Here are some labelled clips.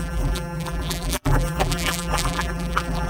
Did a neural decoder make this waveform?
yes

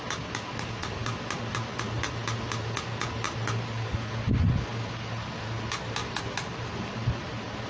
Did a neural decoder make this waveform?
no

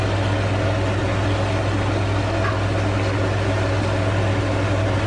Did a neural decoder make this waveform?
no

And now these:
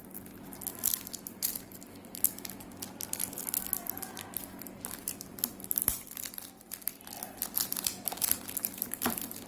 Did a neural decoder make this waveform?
no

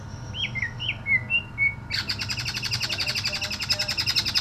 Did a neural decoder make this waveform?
no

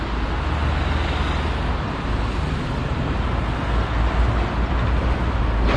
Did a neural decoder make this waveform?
no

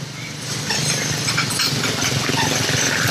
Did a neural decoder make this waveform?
yes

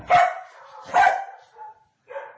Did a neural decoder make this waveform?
yes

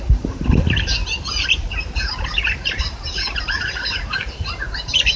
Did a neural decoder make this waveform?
yes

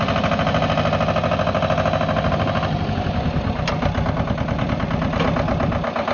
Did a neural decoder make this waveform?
no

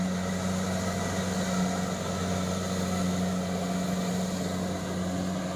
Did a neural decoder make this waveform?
no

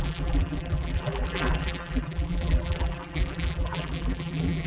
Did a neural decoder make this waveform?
yes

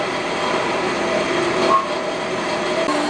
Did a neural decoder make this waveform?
no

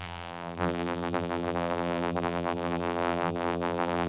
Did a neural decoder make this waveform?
yes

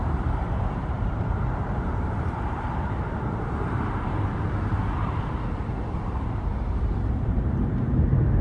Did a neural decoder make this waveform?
yes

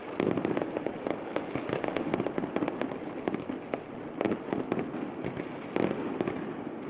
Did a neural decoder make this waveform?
no